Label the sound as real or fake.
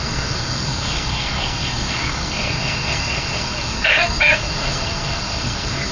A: fake